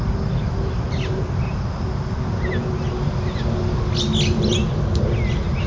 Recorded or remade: recorded